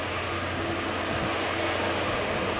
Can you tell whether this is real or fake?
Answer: real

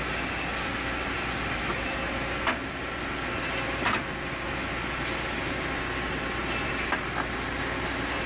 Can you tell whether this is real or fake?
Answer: real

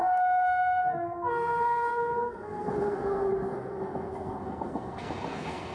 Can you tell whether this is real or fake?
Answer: fake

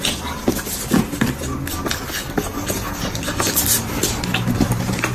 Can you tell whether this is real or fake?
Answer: real